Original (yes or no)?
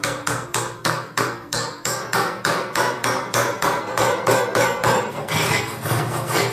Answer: no